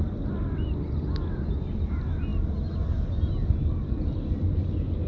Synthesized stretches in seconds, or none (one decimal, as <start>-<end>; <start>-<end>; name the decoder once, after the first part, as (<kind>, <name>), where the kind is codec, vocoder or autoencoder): none